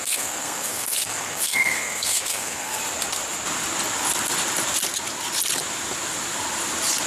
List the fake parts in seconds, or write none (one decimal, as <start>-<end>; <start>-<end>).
0.0-2.8